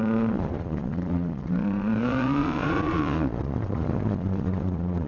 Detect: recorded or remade remade